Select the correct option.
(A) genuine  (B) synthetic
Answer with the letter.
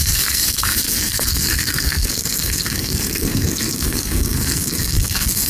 B